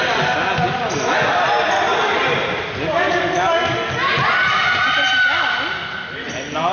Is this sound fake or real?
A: real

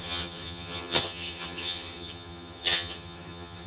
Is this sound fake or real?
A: fake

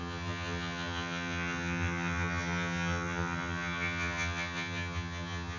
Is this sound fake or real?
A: fake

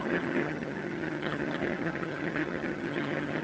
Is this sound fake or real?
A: fake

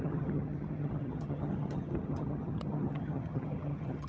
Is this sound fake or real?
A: fake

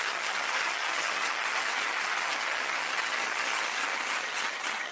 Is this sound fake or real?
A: fake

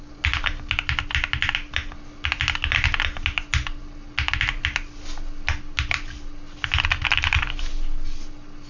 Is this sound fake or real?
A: real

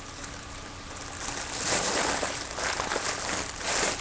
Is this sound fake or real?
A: real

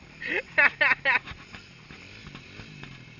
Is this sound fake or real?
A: real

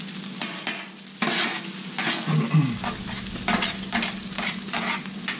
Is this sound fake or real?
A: real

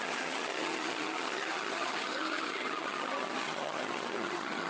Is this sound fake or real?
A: fake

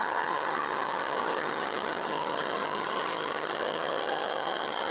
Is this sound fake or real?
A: fake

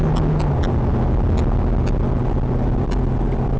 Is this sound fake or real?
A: real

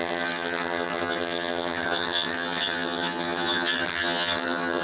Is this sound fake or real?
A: fake